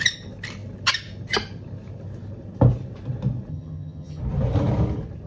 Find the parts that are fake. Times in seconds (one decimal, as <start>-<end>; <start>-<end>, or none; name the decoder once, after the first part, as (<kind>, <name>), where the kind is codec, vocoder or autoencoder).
3.5-4.2 (vocoder, HiFi-GAN)